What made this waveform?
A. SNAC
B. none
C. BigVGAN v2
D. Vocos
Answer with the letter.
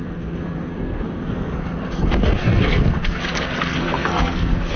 A